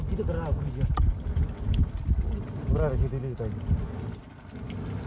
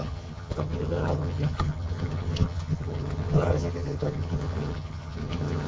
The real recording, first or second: first